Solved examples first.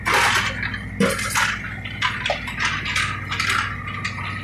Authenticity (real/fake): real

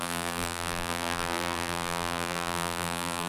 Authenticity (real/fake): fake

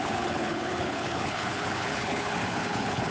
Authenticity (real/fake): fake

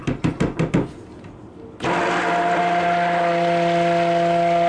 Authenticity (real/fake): real